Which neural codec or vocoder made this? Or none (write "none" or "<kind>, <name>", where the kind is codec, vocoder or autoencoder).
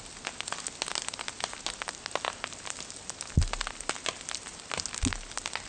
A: none